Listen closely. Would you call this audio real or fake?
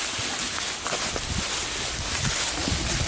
real